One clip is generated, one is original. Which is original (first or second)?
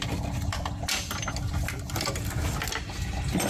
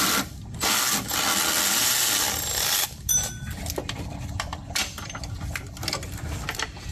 first